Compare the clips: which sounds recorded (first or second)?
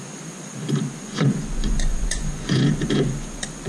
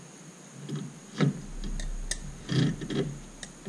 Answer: second